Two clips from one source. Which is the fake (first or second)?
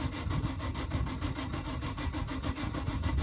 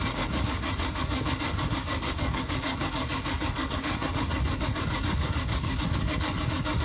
second